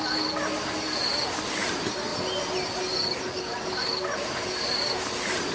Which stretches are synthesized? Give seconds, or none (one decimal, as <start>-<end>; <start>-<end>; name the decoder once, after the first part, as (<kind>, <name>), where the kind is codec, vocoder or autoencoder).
none